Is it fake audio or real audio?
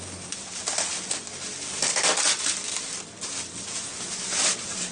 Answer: real